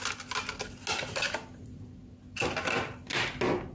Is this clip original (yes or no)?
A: yes